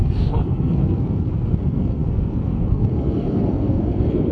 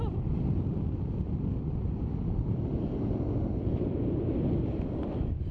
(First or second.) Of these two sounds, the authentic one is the second